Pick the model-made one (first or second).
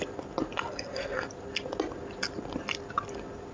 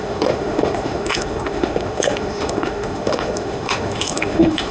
second